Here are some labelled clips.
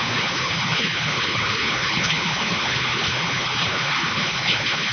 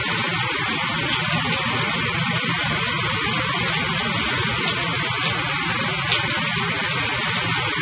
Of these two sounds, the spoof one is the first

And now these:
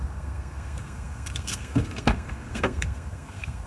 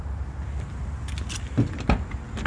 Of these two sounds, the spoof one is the first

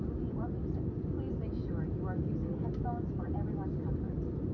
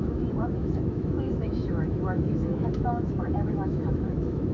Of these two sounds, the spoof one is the second